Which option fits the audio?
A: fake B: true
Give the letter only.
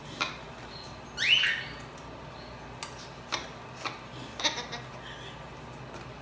B